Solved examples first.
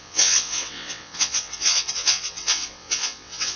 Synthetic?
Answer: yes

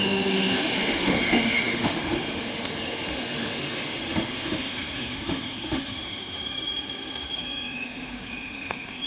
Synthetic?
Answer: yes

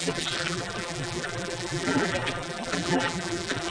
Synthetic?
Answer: yes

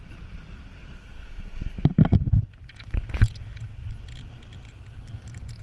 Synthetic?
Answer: no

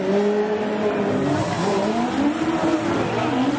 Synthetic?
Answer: no